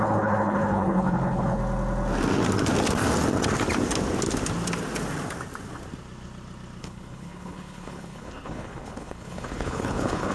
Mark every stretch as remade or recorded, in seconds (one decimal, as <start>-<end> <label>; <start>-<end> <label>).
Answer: 0.0-1.6 remade; 1.6-6.8 recorded; 6.8-10.3 remade